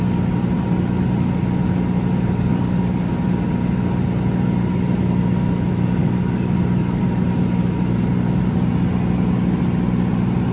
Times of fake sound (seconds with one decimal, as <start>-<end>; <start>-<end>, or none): 2.5-3.1; 6.0-7.0